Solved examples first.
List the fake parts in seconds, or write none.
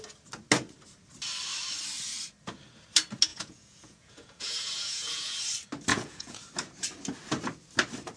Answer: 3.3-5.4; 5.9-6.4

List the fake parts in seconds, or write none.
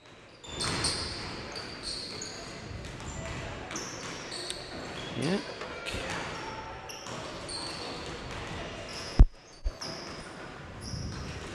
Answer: 8.9-9.7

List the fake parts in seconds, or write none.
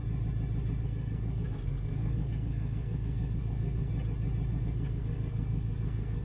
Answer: 0.8-3.9; 4.6-6.2